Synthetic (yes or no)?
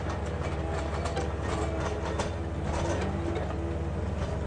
no